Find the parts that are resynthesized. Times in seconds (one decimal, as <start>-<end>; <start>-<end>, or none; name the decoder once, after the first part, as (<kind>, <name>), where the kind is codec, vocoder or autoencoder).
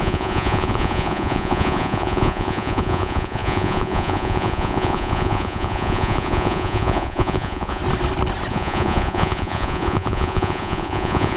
0.0-7.8 (vocoder, Vocos); 8.5-11.4